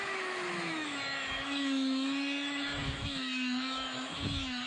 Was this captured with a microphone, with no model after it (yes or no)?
no